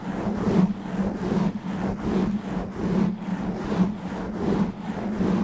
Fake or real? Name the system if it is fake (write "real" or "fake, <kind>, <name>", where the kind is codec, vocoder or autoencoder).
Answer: real